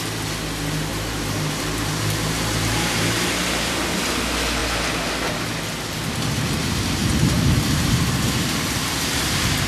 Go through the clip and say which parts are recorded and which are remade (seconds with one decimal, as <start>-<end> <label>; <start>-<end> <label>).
0.0-0.9 recorded; 0.9-4.0 remade; 4.0-6.6 recorded; 6.6-7.9 remade; 7.9-9.7 recorded